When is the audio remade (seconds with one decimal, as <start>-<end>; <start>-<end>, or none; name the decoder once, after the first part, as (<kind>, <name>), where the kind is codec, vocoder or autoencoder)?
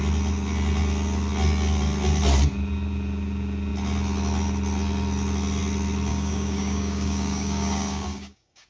6.1-8.7 (codec, DAC)